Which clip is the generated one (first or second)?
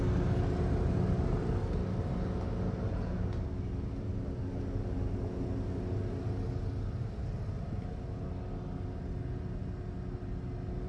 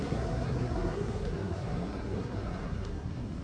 second